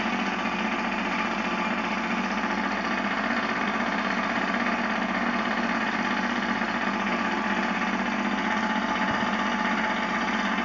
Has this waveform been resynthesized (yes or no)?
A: no